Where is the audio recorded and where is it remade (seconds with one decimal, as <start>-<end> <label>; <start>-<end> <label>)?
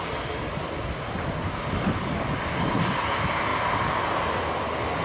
0.0-5.0 recorded